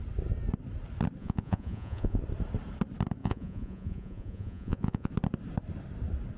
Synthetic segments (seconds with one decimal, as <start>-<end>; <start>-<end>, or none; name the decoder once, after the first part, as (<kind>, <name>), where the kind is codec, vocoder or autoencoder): 1.2-2.2 (vocoder, Vocos); 3.2-5.1